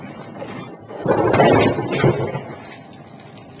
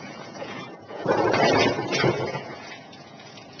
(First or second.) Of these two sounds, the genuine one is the first